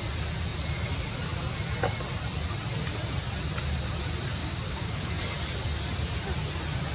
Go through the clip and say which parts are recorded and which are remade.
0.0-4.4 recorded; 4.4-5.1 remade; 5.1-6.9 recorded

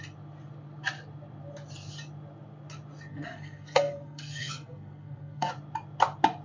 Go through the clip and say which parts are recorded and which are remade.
0.0-3.1 recorded; 3.1-5.5 remade; 5.5-6.4 recorded